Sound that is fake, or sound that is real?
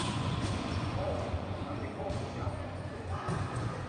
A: fake